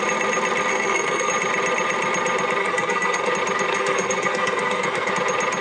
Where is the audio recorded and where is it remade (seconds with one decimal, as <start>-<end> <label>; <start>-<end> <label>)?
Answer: 0.0-0.7 recorded; 0.7-1.3 remade; 1.3-2.6 recorded; 2.6-3.3 remade; 3.3-3.7 recorded; 3.7-5.1 remade; 5.1-5.6 recorded